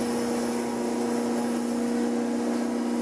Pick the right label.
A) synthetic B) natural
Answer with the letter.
B